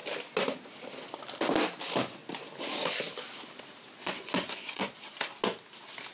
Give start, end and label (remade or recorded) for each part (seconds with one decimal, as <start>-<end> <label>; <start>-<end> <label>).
0.0-4.0 recorded; 4.0-5.0 remade; 5.0-6.1 recorded